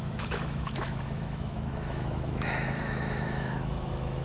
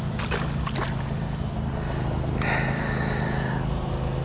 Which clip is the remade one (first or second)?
first